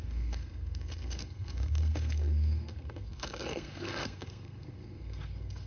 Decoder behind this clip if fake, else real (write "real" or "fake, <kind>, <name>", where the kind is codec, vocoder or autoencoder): fake, codec, SNAC